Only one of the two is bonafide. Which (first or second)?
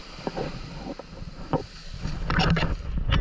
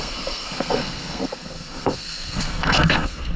first